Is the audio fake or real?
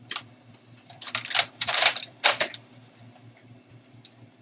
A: fake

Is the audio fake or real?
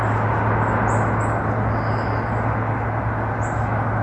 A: real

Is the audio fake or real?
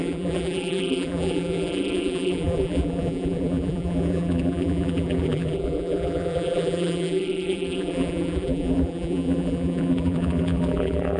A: fake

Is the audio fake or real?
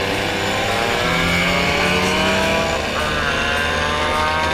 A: real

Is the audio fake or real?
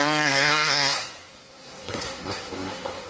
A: fake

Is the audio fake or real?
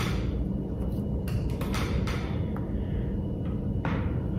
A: real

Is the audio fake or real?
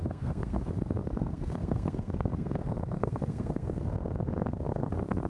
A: fake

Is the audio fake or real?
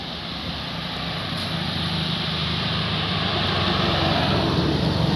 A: real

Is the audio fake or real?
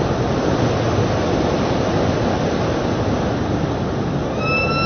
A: real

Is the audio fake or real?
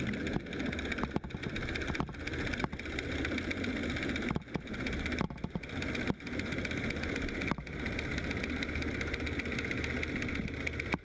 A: real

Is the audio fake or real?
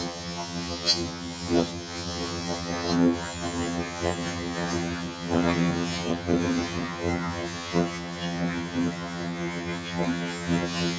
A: fake